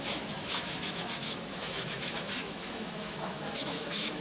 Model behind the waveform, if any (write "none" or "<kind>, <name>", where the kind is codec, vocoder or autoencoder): autoencoder, DAC-VAE